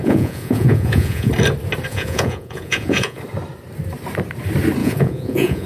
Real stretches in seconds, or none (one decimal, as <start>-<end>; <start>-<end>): 1.3-1.9; 3.2-4.8